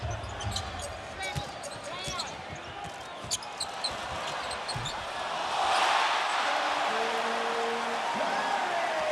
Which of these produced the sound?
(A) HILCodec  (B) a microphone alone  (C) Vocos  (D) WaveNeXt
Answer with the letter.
B